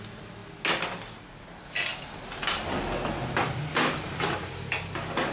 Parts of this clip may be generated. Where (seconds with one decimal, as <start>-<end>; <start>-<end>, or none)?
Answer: none